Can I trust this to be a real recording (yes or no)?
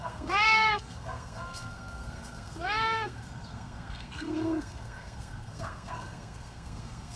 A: no